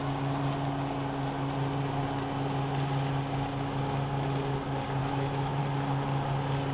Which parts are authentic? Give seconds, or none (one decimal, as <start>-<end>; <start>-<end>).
0.0-5.0; 5.6-6.7